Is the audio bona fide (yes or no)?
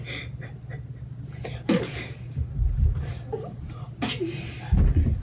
yes